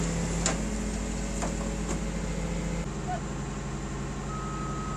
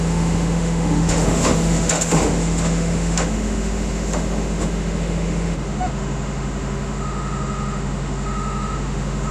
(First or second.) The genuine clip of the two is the first